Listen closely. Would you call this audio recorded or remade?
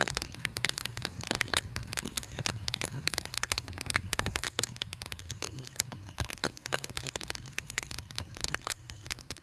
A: remade